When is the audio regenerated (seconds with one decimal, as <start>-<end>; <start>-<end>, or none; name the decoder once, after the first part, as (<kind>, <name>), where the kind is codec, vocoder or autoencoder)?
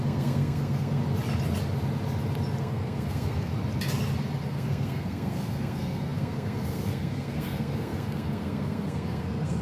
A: 0.0-1.0 (codec, SNAC); 2.6-3.5; 4.4-9.6